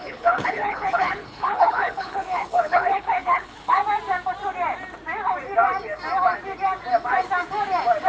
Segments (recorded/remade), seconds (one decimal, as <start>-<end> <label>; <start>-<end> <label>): 0.0-3.8 remade; 3.8-8.1 recorded